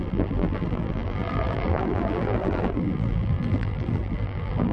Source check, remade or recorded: remade